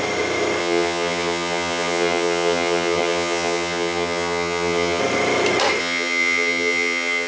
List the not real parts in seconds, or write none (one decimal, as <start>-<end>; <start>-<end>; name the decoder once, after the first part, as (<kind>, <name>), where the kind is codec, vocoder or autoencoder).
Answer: 0.6-5.0 (vocoder, HiFi-GAN); 5.8-7.3